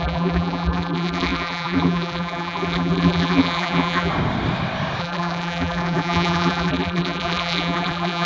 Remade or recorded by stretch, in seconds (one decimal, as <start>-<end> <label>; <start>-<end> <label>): 0.0-4.1 remade; 4.1-5.0 recorded; 5.0-8.3 remade